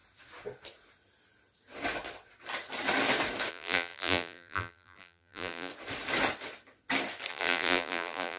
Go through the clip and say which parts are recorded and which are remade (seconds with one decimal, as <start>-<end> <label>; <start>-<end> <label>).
0.0-3.5 recorded; 3.5-5.7 remade; 5.7-7.3 recorded; 7.3-8.4 remade

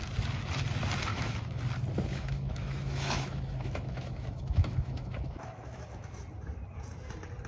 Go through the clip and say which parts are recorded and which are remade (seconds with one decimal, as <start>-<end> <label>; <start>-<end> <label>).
0.0-1.1 recorded; 1.1-1.6 remade; 1.6-2.1 recorded; 2.1-6.2 remade; 6.2-7.5 recorded